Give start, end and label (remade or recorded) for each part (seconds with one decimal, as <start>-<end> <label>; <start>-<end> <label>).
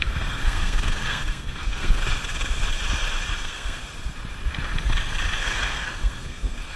0.0-2.0 remade; 2.0-3.4 recorded; 3.4-3.8 remade; 3.8-5.4 recorded; 5.4-6.8 remade